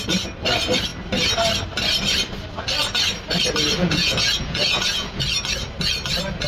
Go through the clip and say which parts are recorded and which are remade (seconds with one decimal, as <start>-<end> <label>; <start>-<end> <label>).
0.0-3.8 recorded; 3.8-5.2 remade; 5.2-6.5 recorded